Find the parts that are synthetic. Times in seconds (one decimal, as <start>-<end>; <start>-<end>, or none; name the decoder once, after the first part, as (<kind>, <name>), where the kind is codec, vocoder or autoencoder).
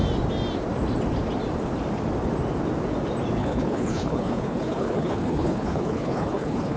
3.4-6.8 (codec, HILCodec)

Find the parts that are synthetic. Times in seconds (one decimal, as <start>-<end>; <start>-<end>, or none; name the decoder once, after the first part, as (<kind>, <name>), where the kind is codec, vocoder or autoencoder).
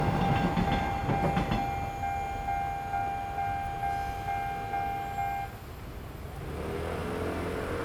none